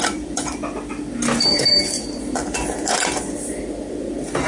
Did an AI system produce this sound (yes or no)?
no